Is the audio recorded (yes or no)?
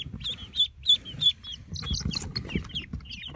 yes